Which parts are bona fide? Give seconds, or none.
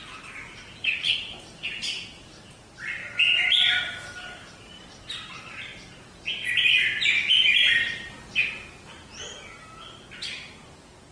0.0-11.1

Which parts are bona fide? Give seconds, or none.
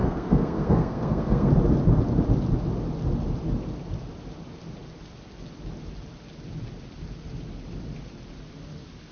1.5-9.1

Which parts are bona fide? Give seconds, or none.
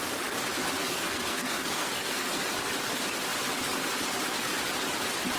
0.0-0.8; 2.4-5.4